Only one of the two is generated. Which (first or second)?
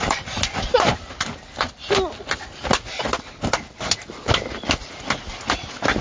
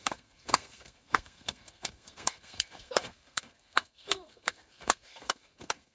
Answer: second